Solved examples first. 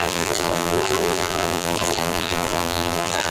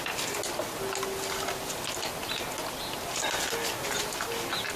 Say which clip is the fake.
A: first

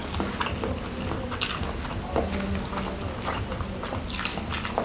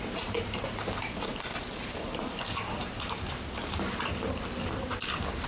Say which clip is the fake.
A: second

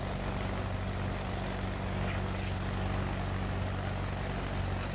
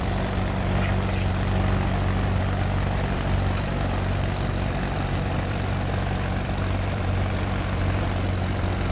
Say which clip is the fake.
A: second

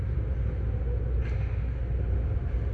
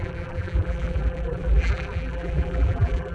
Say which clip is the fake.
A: second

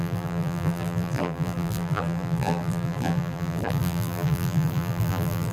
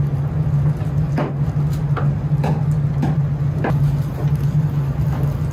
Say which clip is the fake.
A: first